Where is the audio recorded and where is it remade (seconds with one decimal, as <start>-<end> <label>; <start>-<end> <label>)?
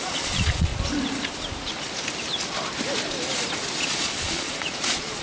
0.0-0.7 remade; 0.7-3.8 recorded; 3.8-5.2 remade